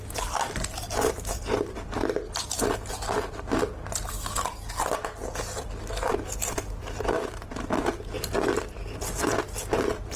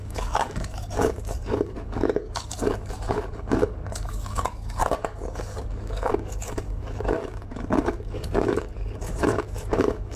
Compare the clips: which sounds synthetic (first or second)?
second